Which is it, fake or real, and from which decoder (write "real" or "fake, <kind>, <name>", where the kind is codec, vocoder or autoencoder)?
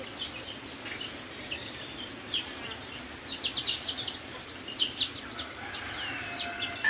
real